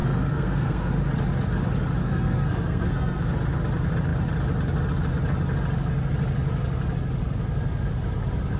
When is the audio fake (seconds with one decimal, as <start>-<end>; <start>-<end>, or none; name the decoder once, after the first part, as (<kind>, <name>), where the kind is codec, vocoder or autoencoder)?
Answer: 0.0-0.9 (codec, SNAC); 2.0-3.2